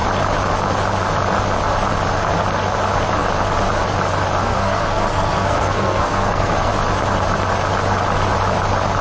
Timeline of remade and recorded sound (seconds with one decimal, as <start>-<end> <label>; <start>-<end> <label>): 0.0-4.4 recorded; 4.4-6.7 remade; 6.7-9.0 recorded